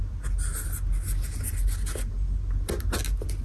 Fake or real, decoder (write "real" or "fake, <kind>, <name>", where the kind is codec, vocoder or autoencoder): real